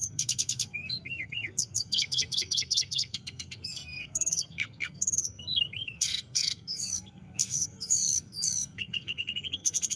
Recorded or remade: remade